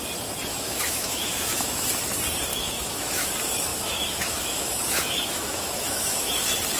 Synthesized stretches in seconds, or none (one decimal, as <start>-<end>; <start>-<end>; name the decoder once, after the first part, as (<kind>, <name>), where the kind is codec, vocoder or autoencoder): 0.5-1.8 (autoencoder, DAC-VAE); 2.5-3.3; 3.7-6.3